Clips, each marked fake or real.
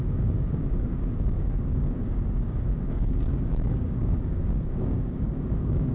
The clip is fake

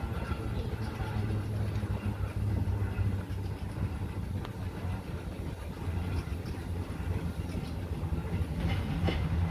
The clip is real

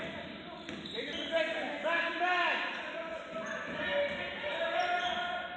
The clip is real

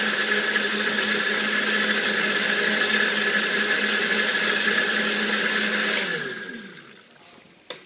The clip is real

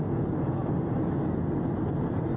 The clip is real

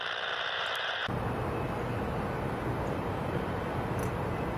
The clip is real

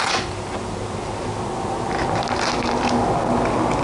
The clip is real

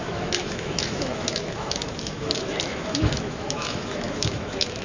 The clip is fake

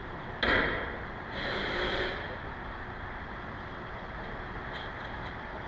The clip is real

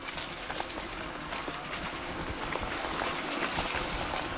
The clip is real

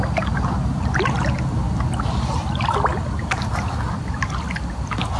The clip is real